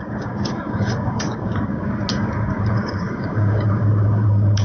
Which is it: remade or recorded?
remade